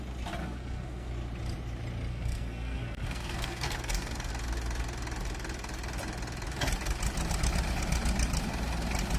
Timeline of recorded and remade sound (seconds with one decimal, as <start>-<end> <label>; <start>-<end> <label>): 0.0-0.4 recorded; 0.4-1.1 remade; 1.1-2.1 recorded; 2.1-4.3 remade; 4.3-9.2 recorded